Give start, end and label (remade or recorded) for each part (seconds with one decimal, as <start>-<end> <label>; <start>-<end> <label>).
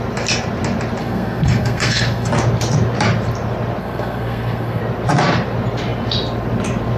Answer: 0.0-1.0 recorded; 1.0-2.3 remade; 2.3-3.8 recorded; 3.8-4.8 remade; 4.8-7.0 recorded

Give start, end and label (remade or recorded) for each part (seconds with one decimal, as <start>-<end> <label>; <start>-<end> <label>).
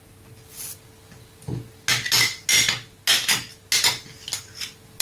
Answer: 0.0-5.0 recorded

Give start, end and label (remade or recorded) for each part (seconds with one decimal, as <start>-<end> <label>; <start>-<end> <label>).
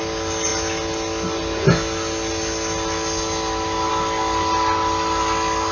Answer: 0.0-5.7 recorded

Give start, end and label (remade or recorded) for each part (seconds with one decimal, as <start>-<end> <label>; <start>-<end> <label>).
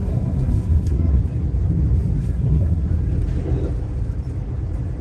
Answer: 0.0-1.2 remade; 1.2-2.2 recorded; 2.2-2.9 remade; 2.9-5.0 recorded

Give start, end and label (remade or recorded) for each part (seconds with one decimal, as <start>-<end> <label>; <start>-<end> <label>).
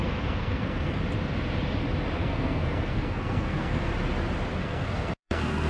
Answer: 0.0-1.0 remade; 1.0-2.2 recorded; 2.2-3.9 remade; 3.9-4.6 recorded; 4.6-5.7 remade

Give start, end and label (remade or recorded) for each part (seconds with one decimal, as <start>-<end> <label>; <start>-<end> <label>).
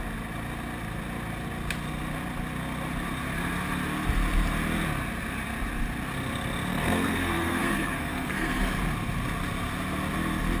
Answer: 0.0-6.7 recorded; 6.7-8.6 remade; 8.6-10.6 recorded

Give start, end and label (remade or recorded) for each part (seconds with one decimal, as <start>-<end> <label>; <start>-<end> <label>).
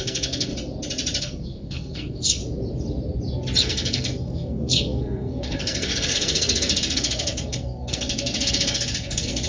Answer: 0.0-0.5 remade; 0.5-1.2 recorded; 1.2-2.4 remade; 2.4-3.6 recorded; 3.6-9.5 remade